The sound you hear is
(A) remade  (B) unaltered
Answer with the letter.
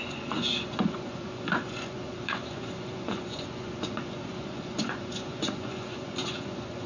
A